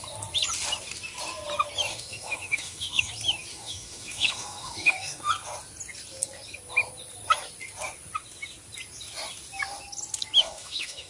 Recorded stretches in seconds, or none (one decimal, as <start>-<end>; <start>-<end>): 0.0-1.9; 3.1-3.5; 5.3-10.4